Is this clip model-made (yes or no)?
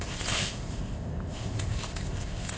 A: yes